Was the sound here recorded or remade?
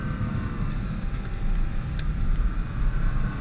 recorded